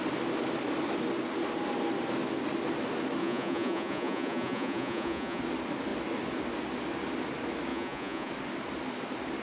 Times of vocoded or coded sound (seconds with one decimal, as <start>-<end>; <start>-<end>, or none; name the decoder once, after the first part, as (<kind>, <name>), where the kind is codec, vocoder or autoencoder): 3.2-5.4 (vocoder, Vocos); 7.7-8.3